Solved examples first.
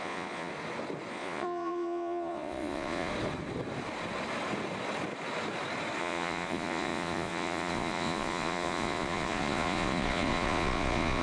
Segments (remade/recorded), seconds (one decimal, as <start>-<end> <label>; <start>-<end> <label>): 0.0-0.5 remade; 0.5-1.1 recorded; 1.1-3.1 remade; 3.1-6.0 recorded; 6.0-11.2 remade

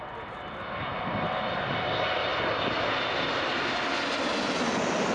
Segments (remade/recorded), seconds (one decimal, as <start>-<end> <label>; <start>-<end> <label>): 0.0-5.1 recorded

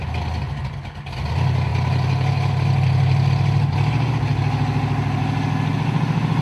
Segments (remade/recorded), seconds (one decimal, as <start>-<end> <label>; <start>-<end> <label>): 0.0-6.4 recorded

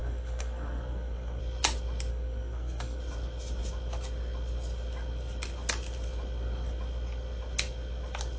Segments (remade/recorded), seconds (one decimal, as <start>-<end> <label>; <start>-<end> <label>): 0.0-1.4 remade; 1.4-2.1 recorded; 2.1-3.0 remade; 3.0-8.4 recorded

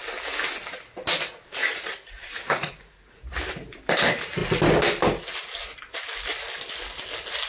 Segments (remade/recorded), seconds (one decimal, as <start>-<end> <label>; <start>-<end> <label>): 0.0-1.6 recorded; 1.6-3.1 remade; 3.1-7.5 recorded

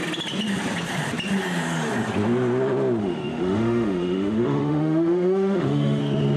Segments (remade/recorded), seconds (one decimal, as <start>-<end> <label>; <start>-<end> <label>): 0.0-3.0 recorded; 3.0-6.0 remade; 6.0-6.4 recorded

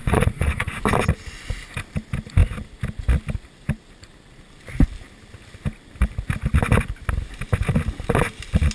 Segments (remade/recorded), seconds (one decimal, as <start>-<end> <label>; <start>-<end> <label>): 0.0-0.8 remade; 0.8-8.7 recorded